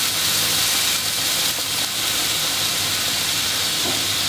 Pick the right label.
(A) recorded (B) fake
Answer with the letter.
B